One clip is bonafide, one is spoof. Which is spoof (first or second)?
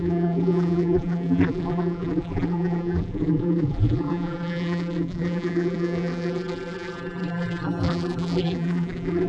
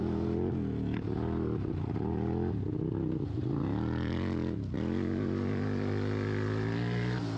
first